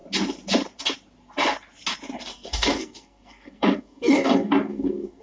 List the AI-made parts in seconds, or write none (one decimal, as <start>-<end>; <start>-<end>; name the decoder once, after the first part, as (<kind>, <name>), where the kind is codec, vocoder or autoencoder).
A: 2.3-5.2 (codec, SNAC)